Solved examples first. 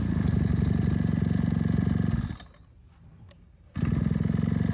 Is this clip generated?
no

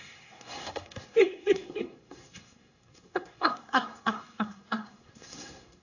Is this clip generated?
yes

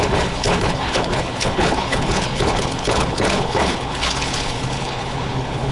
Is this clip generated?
yes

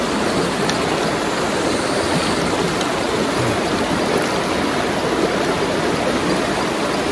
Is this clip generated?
no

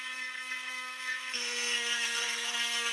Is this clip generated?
yes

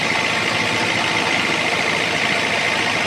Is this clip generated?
no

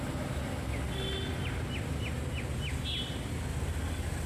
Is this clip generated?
no